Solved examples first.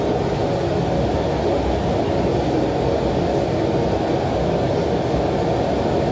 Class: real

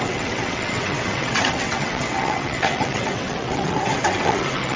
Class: fake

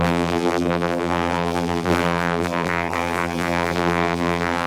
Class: fake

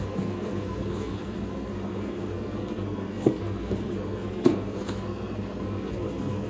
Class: fake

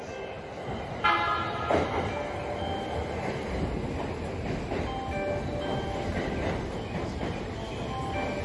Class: real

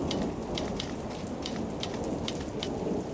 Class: real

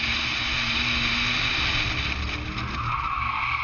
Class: real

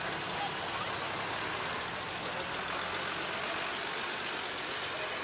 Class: real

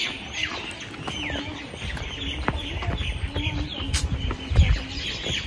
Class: real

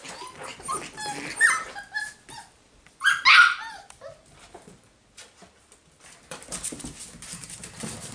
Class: real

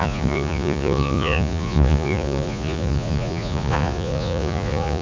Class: fake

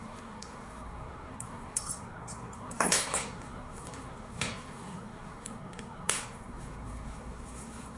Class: fake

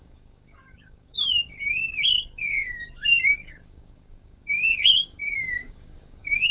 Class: fake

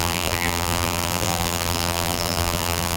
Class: fake